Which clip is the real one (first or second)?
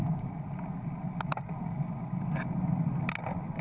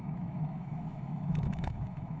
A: first